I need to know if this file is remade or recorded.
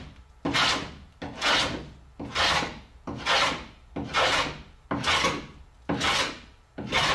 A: recorded